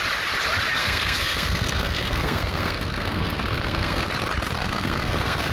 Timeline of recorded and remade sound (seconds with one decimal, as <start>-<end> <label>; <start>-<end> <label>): 0.0-0.8 recorded; 0.8-4.1 remade; 4.1-4.6 recorded; 4.6-5.5 remade